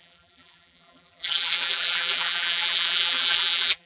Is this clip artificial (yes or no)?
yes